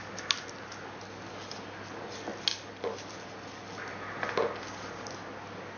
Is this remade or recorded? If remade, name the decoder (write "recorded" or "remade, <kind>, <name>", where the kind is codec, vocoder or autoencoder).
recorded